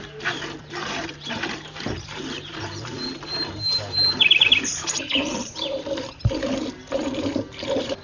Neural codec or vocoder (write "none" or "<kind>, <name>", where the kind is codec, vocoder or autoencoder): vocoder, BigVGAN v2